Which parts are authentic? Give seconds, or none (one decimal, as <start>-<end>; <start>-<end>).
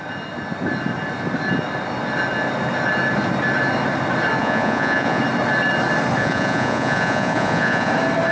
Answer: 0.0-4.4; 5.2-6.2; 7.9-8.3